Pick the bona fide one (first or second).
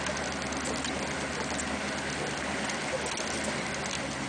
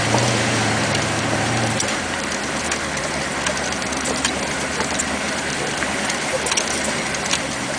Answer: first